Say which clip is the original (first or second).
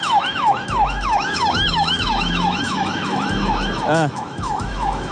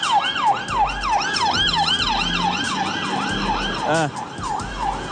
second